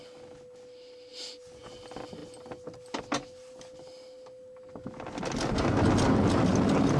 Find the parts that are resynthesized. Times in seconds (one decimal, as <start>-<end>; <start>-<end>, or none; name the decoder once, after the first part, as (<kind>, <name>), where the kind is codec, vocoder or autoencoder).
none